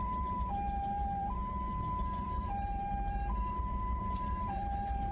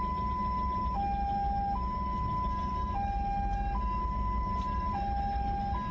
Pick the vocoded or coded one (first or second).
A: first